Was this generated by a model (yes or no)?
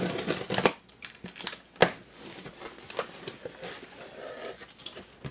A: no